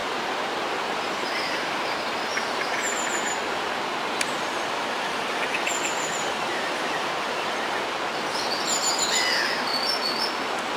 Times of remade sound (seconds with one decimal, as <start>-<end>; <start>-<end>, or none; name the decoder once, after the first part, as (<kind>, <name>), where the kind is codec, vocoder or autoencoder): 0.0-3.4 (vocoder, BigVGAN v2); 6.5-7.6